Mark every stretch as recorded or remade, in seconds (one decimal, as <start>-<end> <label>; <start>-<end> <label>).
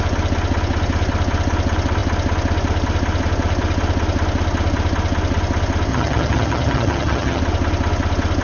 0.0-5.9 recorded; 5.9-7.4 remade; 7.4-8.4 recorded